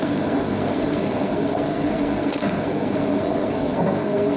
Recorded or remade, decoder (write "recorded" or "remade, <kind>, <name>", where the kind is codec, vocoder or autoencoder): remade, codec, SNAC